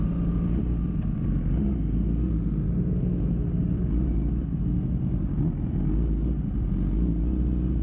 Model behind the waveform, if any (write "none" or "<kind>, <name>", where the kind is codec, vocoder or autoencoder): none